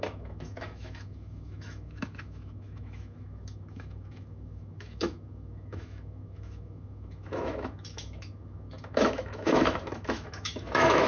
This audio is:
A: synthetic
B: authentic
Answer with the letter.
A